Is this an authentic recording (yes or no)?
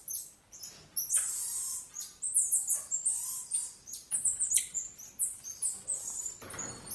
yes